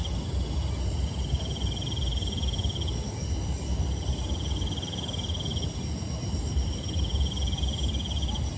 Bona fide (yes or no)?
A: yes